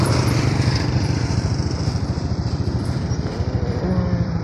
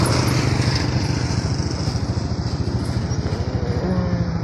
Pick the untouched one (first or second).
second